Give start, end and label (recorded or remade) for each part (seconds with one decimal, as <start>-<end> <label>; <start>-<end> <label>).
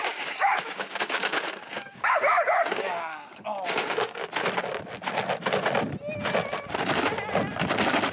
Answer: 0.0-4.2 remade; 4.2-8.1 recorded